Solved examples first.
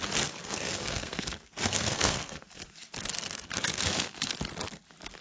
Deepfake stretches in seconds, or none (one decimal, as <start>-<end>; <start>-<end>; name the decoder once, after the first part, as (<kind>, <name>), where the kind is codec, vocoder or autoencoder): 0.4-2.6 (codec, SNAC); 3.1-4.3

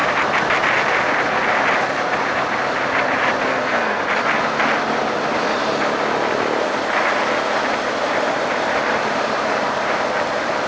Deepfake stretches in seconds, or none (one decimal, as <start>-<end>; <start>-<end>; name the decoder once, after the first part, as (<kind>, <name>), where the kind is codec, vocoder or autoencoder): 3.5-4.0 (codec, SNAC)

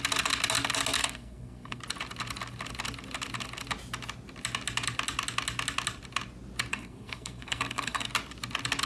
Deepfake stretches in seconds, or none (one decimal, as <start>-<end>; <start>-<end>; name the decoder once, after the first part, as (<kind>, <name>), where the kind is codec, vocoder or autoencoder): 1.0-1.8 (codec, SNAC); 6.7-8.1